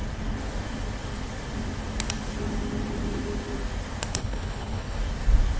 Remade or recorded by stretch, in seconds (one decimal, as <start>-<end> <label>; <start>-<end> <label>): 0.0-4.1 recorded; 4.1-5.0 remade; 5.0-5.6 recorded